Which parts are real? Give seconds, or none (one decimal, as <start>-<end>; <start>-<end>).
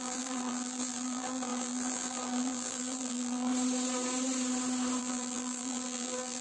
3.5-5.0